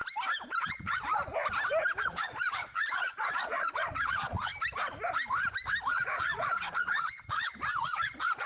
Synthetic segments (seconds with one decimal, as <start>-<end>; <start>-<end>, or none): 0.6-1.1; 2.0-4.5; 5.9-8.5